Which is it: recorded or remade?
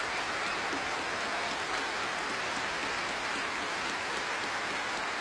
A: recorded